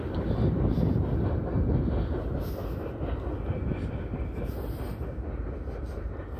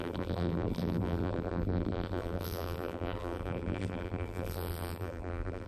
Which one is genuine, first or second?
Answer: first